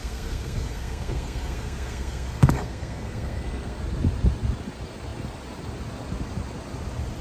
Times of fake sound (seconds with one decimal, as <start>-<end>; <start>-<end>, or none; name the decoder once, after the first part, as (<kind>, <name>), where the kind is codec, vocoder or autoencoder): 0.0-3.8 (codec, SNAC)